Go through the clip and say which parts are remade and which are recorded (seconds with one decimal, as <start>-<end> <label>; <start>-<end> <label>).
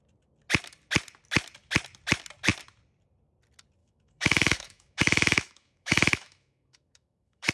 0.0-3.8 recorded; 3.8-7.5 remade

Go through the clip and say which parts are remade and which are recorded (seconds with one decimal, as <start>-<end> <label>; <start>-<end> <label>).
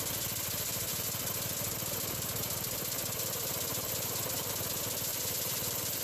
0.0-0.9 recorded; 0.9-4.5 remade; 4.5-5.1 recorded; 5.1-6.0 remade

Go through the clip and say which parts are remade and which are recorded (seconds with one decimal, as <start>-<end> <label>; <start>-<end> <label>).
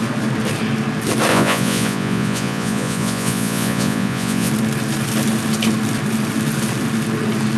0.0-1.3 recorded; 1.3-4.5 remade; 4.5-7.6 recorded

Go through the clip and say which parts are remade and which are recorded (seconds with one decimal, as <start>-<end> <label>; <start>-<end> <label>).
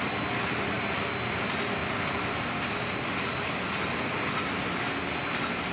0.0-5.7 recorded